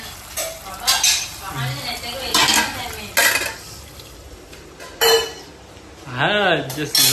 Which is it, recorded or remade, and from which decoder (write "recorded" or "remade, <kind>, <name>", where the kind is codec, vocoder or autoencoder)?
recorded